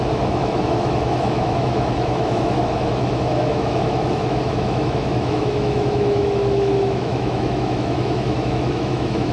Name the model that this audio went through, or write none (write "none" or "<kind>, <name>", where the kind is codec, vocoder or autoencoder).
autoencoder, DAC-VAE